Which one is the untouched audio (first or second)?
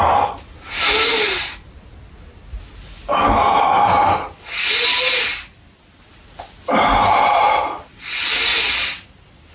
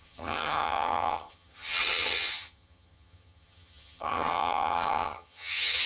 first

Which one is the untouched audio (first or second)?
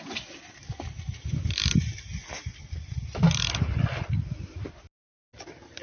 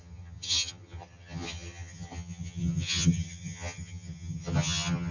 first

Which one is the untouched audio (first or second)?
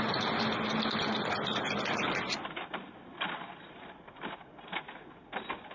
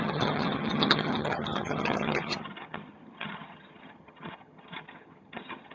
first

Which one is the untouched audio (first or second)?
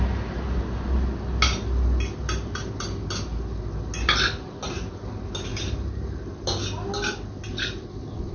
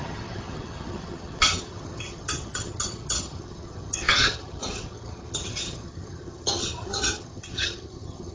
first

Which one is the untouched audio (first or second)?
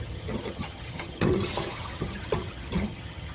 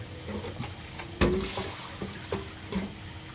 second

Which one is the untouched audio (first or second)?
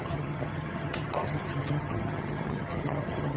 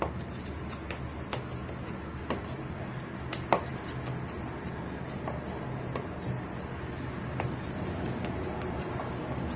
second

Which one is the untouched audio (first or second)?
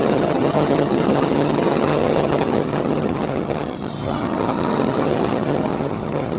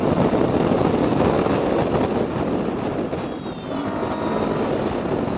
second